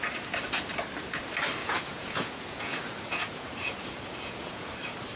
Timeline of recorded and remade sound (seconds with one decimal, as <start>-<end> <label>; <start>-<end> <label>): 0.0-1.6 recorded; 1.6-4.7 remade; 4.7-5.2 recorded